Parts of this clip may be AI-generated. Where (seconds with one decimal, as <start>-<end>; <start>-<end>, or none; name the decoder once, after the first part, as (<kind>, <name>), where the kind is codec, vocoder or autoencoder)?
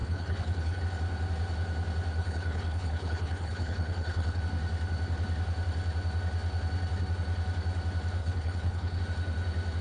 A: 0.0-0.8 (codec, HILCodec); 2.2-4.4; 8.2-9.0